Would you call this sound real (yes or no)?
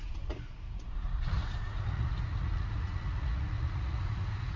no